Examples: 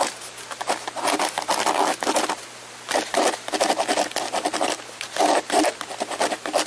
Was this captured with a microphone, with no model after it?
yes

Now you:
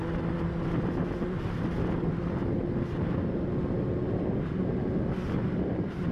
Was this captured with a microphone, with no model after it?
yes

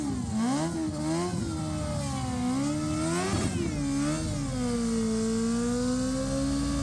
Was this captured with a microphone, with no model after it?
yes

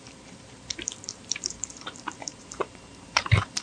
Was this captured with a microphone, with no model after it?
no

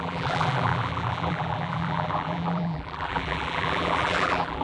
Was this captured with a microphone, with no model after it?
no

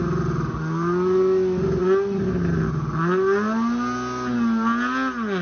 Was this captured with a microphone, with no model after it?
yes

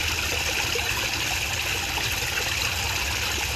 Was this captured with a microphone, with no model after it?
yes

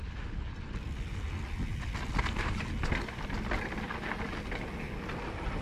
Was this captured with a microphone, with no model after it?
yes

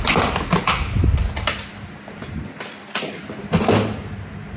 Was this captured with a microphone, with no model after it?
yes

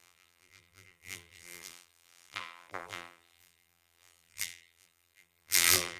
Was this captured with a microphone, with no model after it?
no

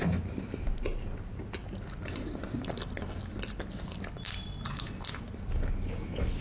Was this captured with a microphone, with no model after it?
yes